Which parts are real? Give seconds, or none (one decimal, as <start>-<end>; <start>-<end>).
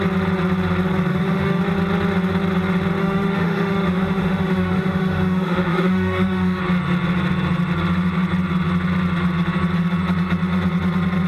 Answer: 0.0-1.1; 1.6-3.0; 6.6-11.3